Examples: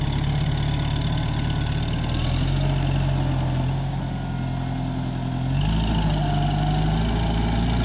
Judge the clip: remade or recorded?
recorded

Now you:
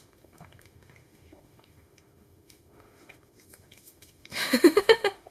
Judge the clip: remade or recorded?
remade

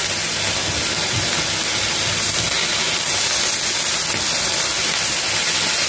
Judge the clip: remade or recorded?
recorded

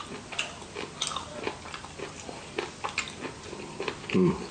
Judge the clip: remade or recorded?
recorded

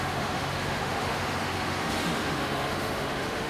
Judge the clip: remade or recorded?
remade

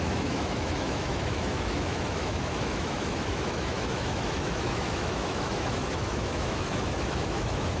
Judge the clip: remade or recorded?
remade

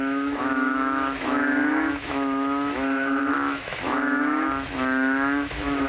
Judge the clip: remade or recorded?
remade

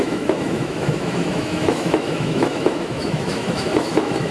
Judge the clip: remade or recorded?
remade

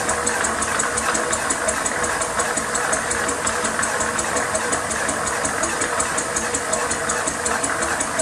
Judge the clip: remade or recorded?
recorded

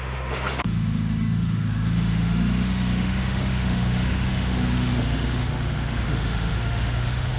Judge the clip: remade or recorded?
remade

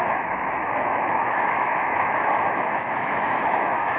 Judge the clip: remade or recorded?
remade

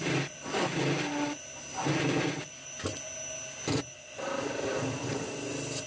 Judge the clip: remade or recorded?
recorded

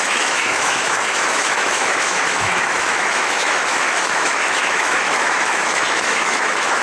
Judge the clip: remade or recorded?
remade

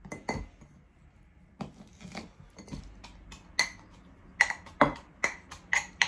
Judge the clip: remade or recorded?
recorded